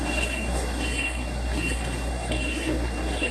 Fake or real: fake